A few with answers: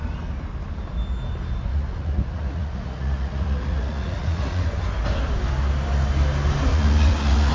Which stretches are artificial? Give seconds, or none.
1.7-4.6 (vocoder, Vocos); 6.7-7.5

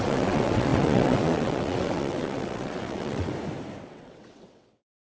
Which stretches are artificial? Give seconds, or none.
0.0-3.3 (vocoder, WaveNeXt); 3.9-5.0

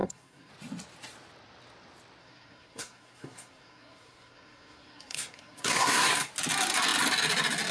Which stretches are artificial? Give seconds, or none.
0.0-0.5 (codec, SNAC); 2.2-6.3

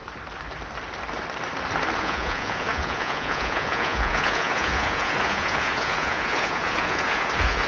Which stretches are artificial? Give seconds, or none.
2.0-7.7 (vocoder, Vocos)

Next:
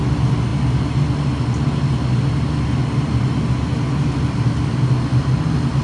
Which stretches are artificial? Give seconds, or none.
none